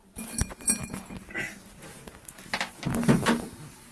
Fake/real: real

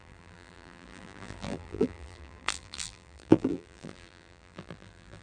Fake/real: fake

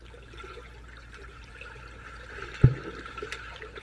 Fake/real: real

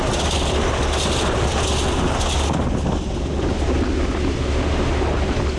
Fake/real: real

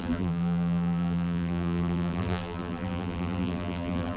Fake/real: fake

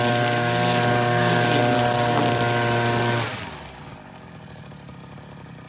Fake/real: real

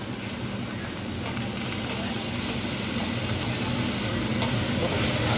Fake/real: real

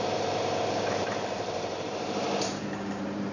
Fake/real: fake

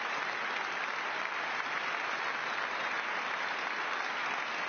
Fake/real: fake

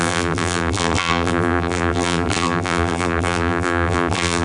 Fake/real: fake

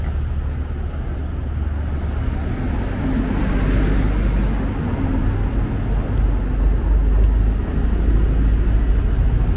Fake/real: real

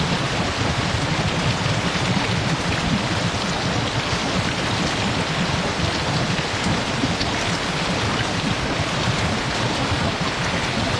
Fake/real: real